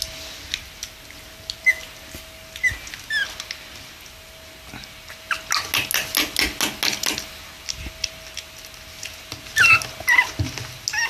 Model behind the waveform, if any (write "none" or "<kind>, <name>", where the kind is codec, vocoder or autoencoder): none